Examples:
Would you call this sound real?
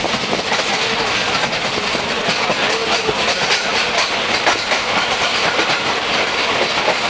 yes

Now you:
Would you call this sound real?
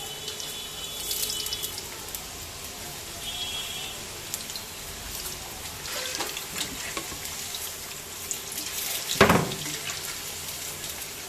yes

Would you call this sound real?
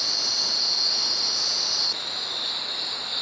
yes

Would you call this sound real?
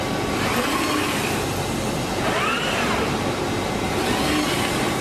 yes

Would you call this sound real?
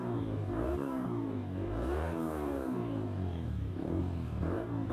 no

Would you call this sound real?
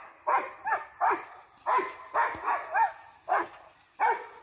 yes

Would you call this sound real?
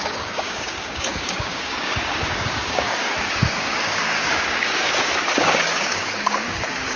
no